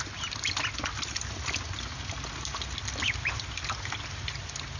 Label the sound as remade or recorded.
recorded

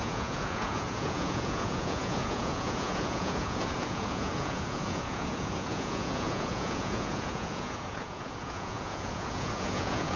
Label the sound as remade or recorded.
remade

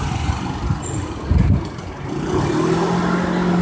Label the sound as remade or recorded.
recorded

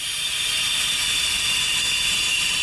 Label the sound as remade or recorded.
recorded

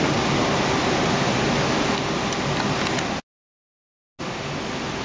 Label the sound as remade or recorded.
recorded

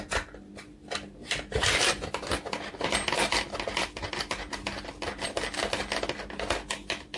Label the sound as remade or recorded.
recorded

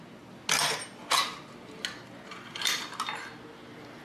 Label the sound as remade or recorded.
recorded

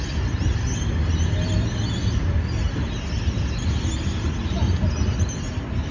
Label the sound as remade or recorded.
recorded